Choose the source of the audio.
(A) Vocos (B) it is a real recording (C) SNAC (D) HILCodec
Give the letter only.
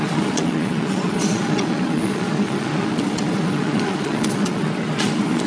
A